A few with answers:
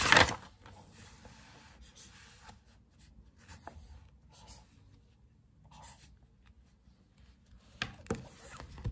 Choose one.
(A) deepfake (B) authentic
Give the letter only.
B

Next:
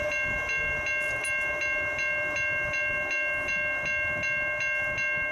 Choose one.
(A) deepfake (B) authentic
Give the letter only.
B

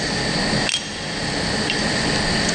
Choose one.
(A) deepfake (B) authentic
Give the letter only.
B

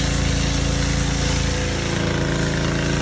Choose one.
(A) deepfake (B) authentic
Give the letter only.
B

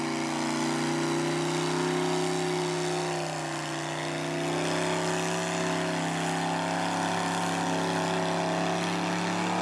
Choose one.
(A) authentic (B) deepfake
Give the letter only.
A